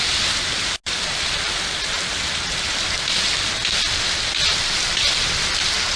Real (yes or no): yes